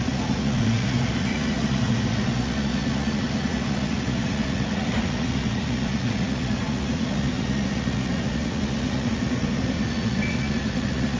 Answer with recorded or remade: remade